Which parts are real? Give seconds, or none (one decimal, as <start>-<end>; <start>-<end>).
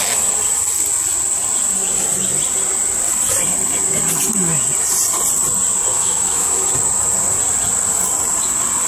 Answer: 0.0-5.9; 6.7-8.9